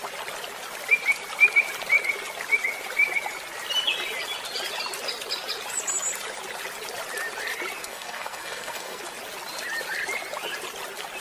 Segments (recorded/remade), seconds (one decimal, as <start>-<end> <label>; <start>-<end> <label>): 0.0-7.8 recorded; 7.8-9.0 remade; 9.0-11.2 recorded